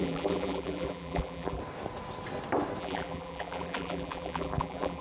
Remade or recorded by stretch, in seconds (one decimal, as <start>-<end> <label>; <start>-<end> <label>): 0.0-1.6 remade; 1.6-2.8 recorded; 2.8-5.0 remade